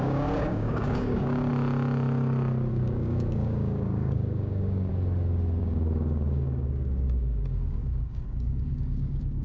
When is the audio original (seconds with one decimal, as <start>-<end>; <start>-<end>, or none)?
1.5-2.7; 4.9-5.6

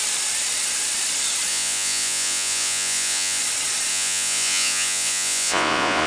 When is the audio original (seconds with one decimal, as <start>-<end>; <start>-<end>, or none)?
0.0-1.5; 3.4-3.9

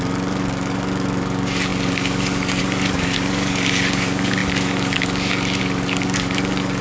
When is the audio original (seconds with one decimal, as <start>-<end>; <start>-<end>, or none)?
none